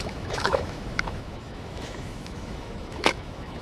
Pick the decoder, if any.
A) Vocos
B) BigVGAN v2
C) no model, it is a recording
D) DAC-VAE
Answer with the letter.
D